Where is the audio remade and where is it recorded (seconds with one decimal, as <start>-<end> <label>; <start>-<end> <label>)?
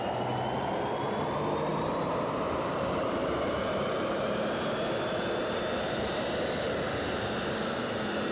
0.0-1.7 recorded; 1.7-4.6 remade; 4.6-8.3 recorded